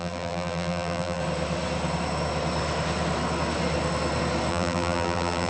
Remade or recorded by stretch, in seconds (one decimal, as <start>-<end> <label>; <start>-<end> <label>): 0.0-1.2 remade; 1.2-4.5 recorded; 4.5-5.5 remade